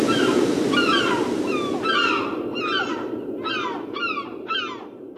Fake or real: real